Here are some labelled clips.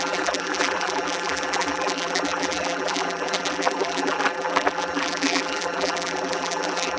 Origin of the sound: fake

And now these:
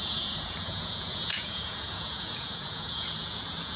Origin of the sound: fake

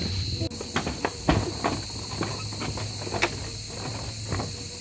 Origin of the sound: real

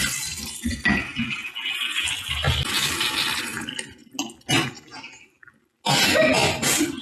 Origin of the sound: real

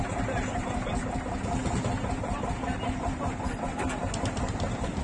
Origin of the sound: real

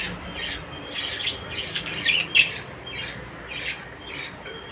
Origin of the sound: real